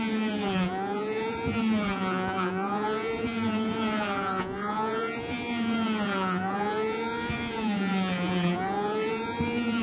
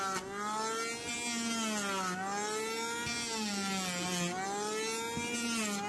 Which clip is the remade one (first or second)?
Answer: first